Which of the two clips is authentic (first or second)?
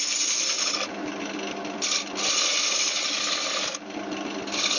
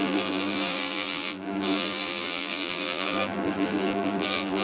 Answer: first